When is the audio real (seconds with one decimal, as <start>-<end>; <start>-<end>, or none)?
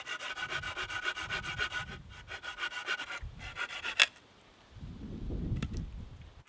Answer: 0.0-6.5